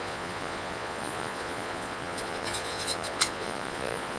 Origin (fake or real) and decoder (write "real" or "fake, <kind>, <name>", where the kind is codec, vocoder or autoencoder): fake, vocoder, Vocos